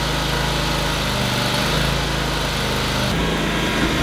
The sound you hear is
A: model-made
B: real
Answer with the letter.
B